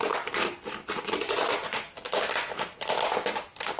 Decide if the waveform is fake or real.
real